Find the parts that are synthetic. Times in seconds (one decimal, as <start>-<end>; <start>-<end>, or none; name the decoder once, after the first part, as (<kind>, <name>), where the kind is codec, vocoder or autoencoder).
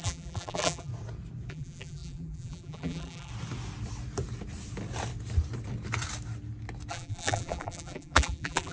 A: 0.0-0.9 (vocoder, BigVGAN v2); 1.5-3.3; 6.9-8.7